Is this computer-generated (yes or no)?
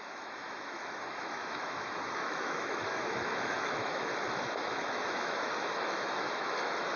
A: yes